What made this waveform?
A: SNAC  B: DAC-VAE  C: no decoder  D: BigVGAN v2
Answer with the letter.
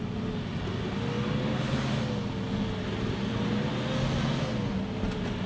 C